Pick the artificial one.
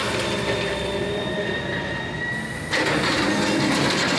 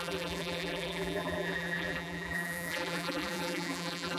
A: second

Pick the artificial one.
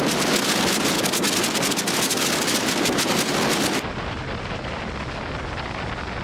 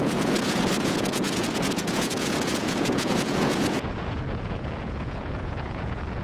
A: second